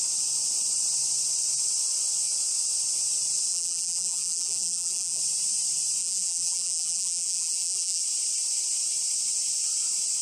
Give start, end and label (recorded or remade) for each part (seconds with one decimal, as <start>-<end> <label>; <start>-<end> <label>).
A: 0.0-3.5 recorded; 3.5-5.2 remade; 5.2-6.0 recorded; 6.0-8.0 remade; 8.0-10.2 recorded